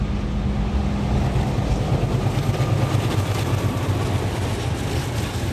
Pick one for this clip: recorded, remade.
recorded